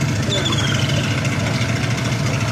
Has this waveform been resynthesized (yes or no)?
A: no